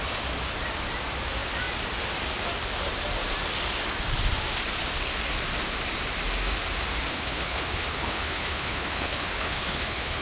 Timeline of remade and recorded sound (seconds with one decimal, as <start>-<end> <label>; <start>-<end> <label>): 0.0-7.1 recorded; 7.1-10.2 remade